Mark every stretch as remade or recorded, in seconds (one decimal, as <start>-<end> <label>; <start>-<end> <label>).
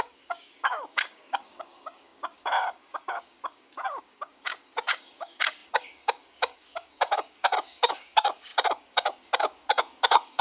0.0-10.4 remade